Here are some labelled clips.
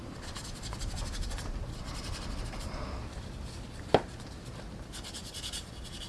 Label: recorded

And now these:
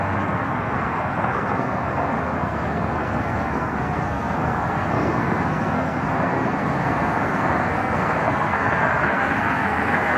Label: remade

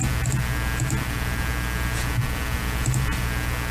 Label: recorded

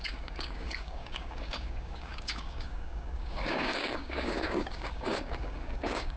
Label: remade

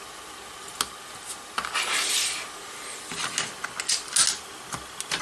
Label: recorded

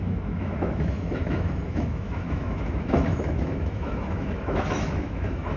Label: remade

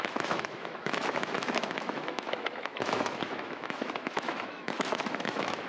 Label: remade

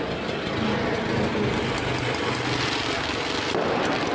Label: recorded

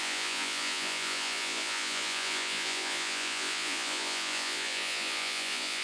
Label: remade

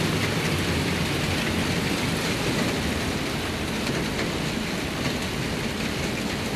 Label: recorded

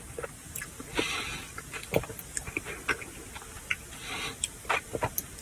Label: recorded